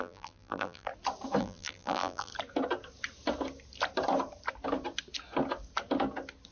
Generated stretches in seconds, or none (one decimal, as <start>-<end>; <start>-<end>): 0.0-0.9; 1.4-2.3